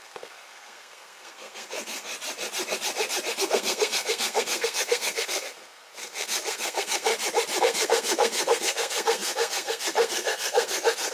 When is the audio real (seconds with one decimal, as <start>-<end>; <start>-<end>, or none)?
2.1-3.4; 7.1-7.6